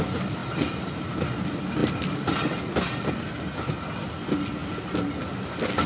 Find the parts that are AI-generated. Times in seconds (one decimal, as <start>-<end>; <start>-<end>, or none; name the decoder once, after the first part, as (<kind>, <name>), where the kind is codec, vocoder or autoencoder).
none